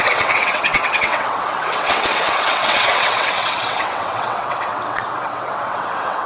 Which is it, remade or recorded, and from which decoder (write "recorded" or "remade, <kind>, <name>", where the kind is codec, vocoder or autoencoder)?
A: remade, vocoder, WaveNeXt